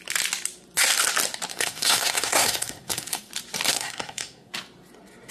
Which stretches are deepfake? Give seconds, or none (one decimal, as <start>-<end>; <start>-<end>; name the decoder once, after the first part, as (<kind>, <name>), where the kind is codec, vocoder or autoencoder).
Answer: 1.5-3.3 (codec, SNAC); 3.7-4.5